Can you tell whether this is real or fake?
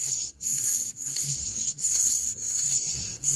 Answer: fake